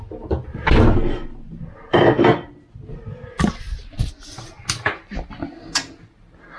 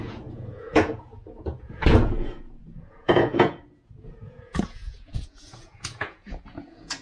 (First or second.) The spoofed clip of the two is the second